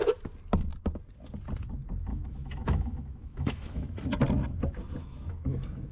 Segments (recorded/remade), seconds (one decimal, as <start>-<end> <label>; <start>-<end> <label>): 0.0-2.1 recorded; 2.1-3.9 remade; 3.9-5.0 recorded; 5.0-5.9 remade